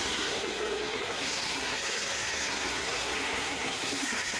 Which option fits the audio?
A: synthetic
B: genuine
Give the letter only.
A